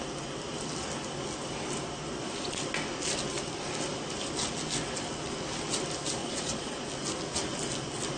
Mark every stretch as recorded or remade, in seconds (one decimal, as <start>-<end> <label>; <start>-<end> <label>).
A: 0.0-6.2 recorded; 6.2-6.9 remade; 6.9-8.2 recorded